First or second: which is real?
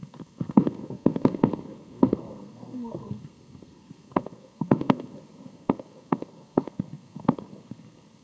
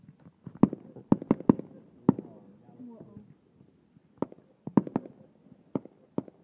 second